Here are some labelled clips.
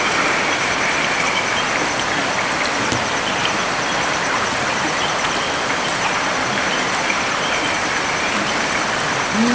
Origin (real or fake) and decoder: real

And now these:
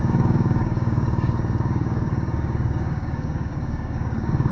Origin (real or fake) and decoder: fake, codec, DAC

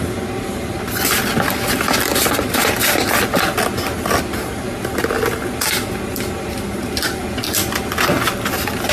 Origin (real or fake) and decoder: real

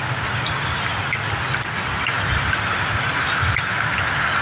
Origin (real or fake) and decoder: real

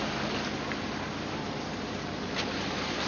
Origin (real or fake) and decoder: real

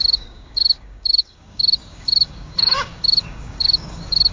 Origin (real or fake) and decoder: fake, codec, DAC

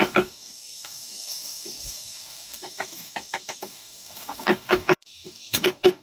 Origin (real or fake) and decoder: fake, codec, DAC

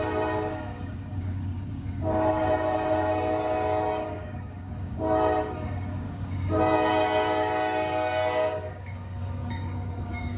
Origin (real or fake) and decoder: fake, codec, DAC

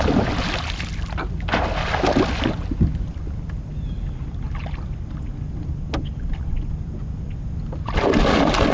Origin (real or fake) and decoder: real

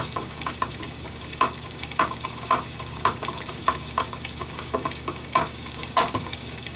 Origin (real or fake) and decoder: fake, codec, DAC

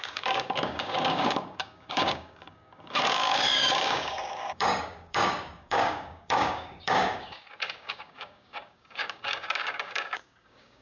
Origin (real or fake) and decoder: fake, codec, DAC